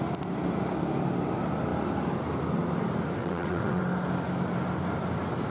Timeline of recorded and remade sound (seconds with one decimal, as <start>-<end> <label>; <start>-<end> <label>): 0.0-3.2 recorded; 3.2-3.8 remade; 3.8-5.5 recorded